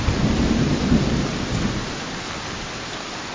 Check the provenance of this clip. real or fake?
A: real